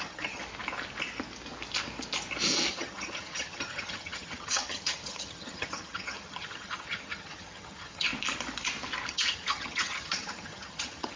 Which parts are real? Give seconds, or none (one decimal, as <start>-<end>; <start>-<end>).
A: 0.4-2.7; 8.1-9.1